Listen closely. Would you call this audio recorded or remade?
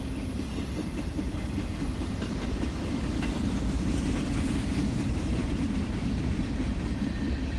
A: remade